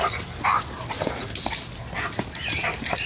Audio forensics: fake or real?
real